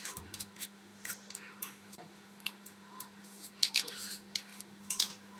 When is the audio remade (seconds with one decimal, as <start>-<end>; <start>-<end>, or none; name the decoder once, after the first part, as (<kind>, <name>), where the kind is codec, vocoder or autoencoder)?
0.0-5.4 (autoencoder, DAC-VAE)